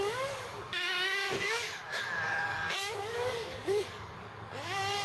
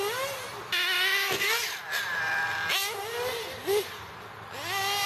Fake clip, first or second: first